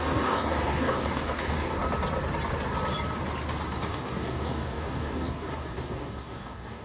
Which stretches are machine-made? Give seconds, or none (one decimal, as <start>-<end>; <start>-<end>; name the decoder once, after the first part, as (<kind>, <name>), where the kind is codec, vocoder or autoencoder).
0.0-1.8 (codec, DAC); 3.8-6.8